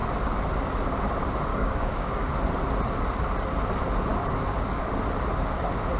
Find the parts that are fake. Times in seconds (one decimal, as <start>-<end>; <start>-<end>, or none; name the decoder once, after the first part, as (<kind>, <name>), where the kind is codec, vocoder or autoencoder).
1.5-2.3 (codec, DAC); 4.1-4.9